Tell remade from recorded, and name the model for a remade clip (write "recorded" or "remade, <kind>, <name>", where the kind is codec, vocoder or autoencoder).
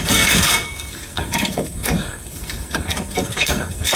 remade, codec, SNAC